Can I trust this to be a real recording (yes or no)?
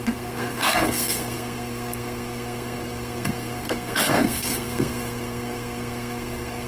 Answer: no